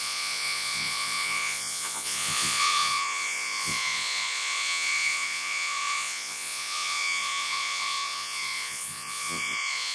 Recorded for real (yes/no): no